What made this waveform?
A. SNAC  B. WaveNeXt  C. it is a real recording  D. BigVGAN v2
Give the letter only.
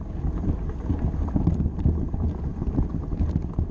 C